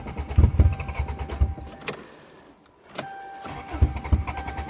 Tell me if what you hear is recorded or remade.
recorded